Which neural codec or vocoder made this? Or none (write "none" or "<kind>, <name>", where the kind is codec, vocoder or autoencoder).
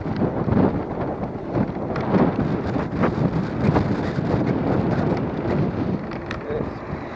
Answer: none